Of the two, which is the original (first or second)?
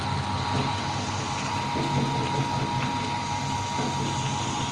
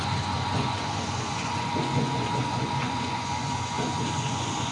first